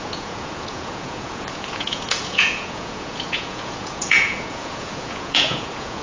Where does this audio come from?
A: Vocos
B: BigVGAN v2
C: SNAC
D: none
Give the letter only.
A